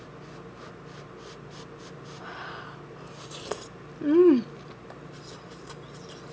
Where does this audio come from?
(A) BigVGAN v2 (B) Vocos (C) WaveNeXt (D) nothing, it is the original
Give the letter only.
D